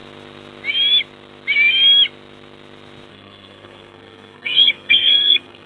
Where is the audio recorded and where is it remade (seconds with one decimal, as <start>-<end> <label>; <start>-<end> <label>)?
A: 0.0-3.1 recorded; 3.1-5.7 remade